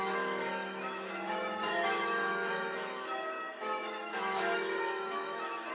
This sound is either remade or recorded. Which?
remade